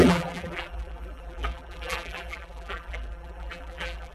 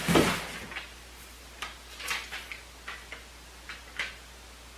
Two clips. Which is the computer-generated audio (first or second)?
first